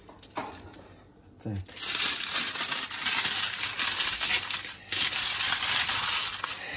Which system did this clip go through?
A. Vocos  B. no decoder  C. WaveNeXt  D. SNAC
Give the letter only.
B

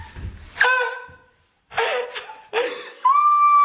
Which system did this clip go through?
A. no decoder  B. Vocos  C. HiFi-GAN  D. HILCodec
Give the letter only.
A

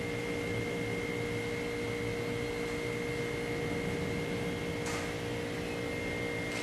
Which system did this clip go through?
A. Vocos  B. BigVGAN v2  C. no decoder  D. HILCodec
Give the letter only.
C